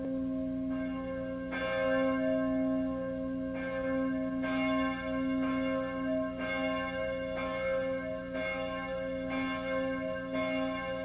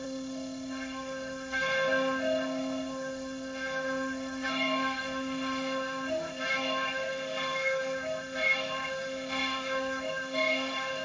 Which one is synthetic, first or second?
second